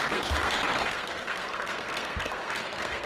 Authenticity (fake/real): fake